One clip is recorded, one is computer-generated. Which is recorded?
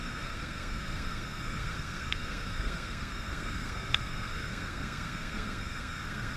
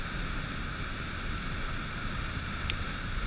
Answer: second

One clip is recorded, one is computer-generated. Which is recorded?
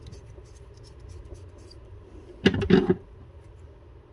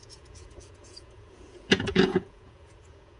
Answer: first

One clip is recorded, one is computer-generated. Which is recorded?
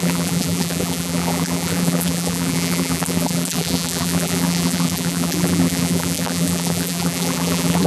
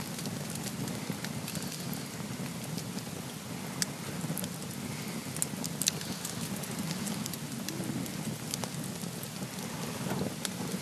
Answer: second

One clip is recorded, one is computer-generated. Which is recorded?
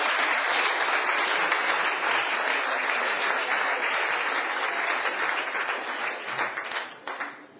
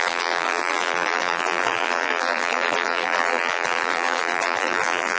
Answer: first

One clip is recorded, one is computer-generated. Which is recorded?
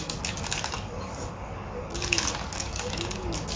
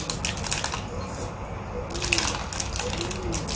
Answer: second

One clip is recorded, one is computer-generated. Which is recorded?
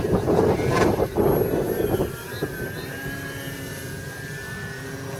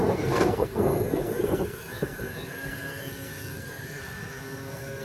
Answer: first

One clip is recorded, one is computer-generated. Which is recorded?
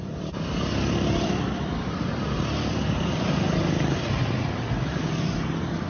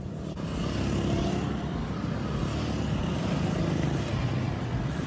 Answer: second